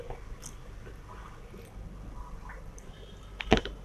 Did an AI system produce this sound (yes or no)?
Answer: no